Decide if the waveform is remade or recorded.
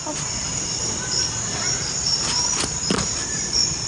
recorded